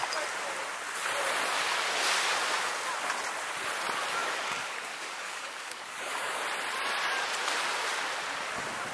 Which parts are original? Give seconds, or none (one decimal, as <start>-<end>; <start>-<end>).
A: 0.0-4.2; 6.4-8.9